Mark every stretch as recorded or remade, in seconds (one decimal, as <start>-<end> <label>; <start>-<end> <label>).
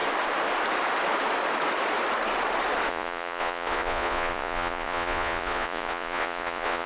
0.0-2.9 recorded; 2.9-6.9 remade